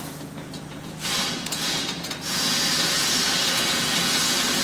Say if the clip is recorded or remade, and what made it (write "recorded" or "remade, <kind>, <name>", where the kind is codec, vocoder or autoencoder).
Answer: remade, vocoder, Vocos